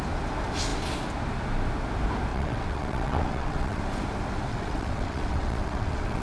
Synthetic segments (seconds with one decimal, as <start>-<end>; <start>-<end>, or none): 2.3-3.8; 4.5-6.2